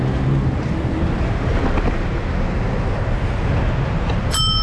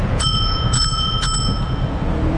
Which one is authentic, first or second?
first